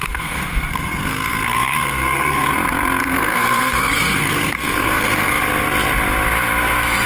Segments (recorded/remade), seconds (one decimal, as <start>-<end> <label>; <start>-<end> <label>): 0.0-2.5 remade; 2.5-3.0 recorded; 3.0-5.4 remade; 5.4-7.1 recorded